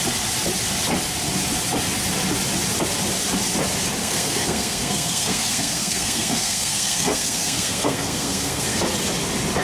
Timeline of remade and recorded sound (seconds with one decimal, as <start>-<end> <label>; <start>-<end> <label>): 0.0-4.0 recorded; 4.0-8.8 remade; 8.8-9.6 recorded